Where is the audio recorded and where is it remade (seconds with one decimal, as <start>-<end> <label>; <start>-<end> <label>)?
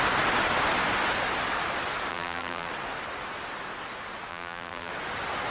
0.0-2.1 recorded; 2.1-2.7 remade; 2.7-4.3 recorded; 4.3-4.9 remade; 4.9-5.5 recorded